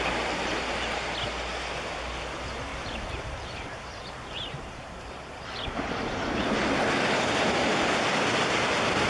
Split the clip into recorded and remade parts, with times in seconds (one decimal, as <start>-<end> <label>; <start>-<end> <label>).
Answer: 0.0-2.7 recorded; 2.7-6.6 remade; 6.6-9.1 recorded